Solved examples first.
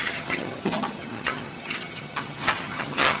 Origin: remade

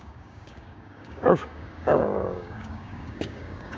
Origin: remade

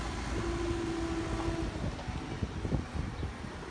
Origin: recorded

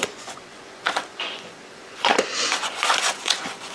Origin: remade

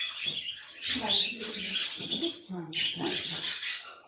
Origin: remade